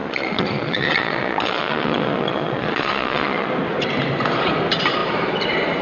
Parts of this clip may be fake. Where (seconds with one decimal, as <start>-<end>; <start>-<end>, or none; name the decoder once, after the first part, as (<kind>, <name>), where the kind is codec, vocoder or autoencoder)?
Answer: 0.0-3.5 (vocoder, Vocos)